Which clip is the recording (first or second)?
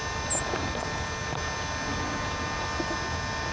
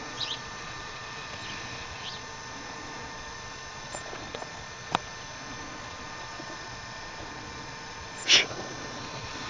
first